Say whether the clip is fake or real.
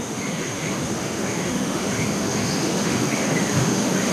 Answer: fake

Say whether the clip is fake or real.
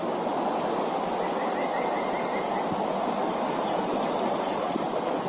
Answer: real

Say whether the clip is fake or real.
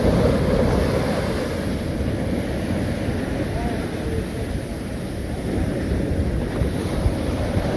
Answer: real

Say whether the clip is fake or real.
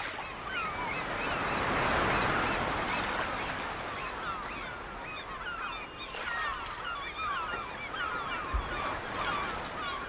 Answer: real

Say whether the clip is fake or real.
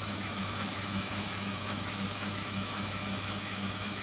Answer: fake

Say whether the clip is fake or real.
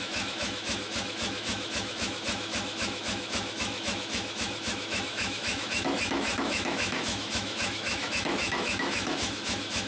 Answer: fake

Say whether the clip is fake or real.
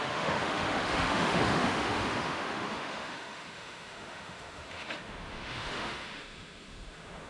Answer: fake